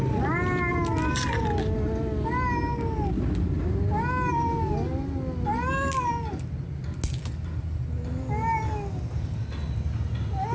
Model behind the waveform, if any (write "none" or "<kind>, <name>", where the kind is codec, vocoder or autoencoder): none